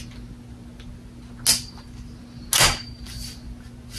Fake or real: real